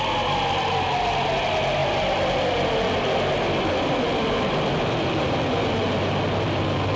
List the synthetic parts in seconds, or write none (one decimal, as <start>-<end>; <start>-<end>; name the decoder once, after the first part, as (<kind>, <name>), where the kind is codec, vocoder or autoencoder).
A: none

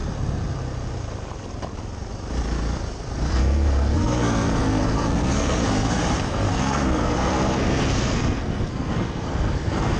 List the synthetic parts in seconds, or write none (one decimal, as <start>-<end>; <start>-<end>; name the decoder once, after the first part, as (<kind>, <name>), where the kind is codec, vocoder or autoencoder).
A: 3.3-6.0 (codec, SNAC); 6.5-10.0